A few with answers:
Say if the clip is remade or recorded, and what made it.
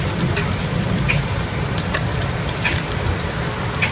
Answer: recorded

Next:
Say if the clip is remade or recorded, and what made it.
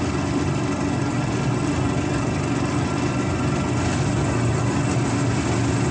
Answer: recorded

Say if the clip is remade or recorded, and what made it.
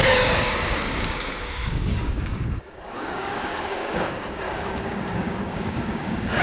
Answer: remade, codec, DAC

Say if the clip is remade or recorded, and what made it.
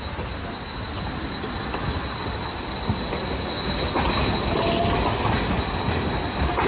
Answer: recorded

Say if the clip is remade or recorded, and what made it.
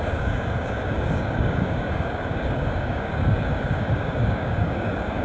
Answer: remade, codec, DAC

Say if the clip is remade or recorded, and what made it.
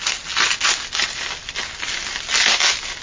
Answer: recorded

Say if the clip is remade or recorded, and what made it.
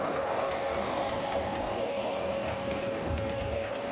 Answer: remade, codec, DAC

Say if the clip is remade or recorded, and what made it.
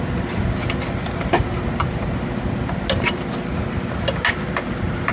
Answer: recorded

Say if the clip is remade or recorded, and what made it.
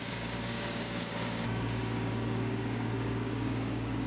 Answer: remade, codec, DAC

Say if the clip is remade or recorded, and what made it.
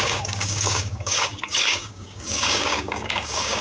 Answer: remade, codec, DAC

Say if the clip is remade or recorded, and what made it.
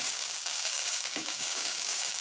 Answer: remade, codec, DAC